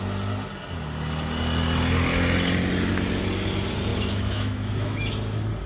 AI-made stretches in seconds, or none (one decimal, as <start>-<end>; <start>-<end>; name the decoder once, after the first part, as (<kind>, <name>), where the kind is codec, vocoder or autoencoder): 3.9-5.1 (autoencoder, DAC-VAE)